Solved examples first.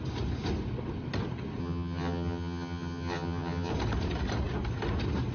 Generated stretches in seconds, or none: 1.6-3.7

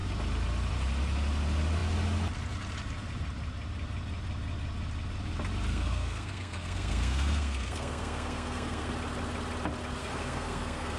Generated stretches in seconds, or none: 5.7-8.9; 10.0-11.0

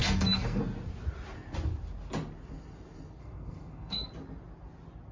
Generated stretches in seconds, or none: 0.0-0.6; 3.2-4.1

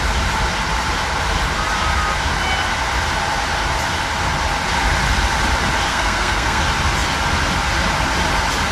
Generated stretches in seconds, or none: 5.9-6.6

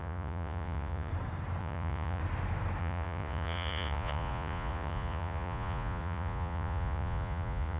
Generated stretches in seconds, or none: 0.0-1.1; 1.6-2.2; 2.8-7.8

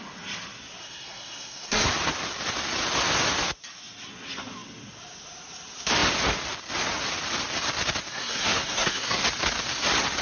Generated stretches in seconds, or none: 0.8-1.9; 8.1-9.2